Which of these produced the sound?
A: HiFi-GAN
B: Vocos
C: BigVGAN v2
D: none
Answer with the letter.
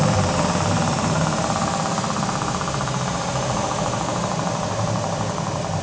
C